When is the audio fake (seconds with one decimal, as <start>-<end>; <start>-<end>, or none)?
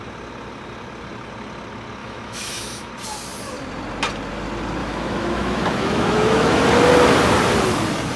2.0-2.9; 4.8-6.6